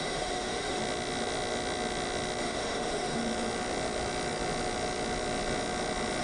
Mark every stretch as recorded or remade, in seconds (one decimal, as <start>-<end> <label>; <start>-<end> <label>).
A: 0.0-0.8 remade; 0.8-2.4 recorded; 2.4-3.2 remade; 3.2-6.2 recorded